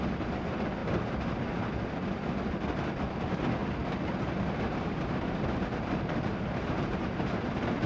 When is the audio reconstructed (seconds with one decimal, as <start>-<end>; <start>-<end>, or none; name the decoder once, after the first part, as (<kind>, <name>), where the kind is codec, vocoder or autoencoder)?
0.8-1.7 (vocoder, BigVGAN v2); 3.6-7.5